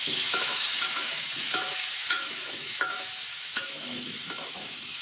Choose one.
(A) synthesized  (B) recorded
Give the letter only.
A